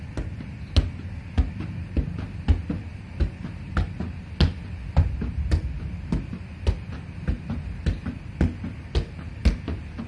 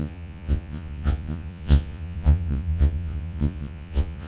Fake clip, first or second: second